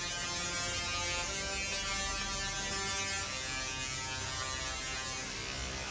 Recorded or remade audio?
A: recorded